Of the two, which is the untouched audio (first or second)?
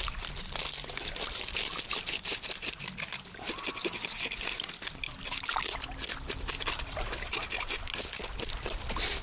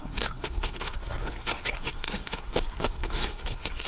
first